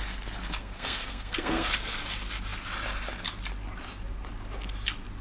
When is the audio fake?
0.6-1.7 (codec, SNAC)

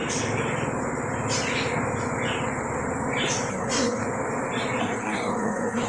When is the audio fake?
3.5-4.0 (codec, SNAC); 4.8-5.9

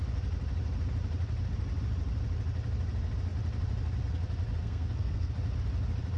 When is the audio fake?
4.6-5.3 (codec, SNAC)

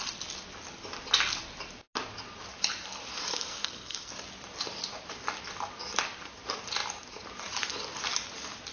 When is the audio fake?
3.3-4.1 (codec, SNAC)

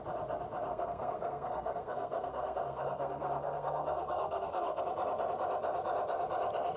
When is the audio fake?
0.7-4.8 (codec, SNAC)

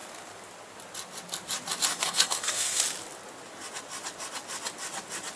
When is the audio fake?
1.9-2.8 (codec, SNAC)